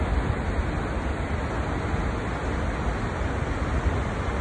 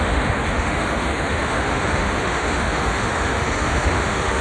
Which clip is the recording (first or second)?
first